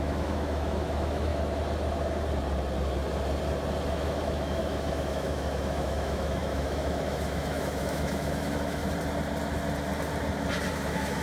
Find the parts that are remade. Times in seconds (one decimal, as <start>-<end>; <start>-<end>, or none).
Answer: 0.0-1.3; 3.9-8.8; 10.7-11.2